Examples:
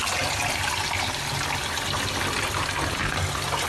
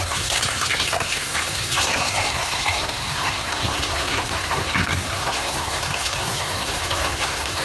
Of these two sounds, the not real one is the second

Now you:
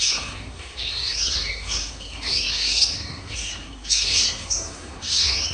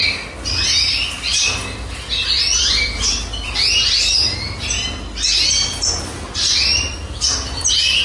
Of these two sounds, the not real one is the first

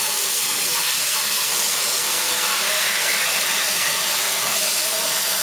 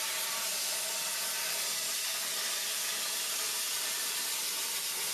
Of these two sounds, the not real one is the first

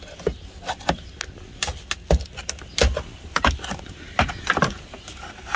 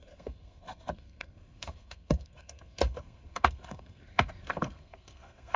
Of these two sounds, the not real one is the second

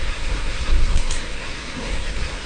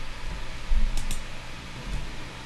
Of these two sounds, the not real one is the first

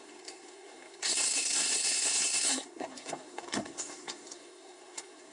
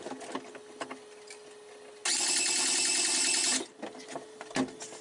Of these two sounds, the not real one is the first